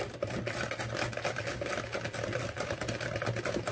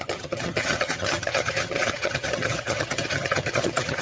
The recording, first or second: first